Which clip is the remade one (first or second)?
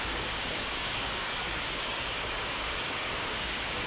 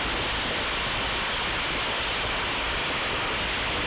first